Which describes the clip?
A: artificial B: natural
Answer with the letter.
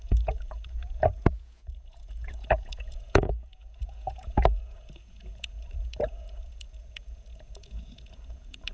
A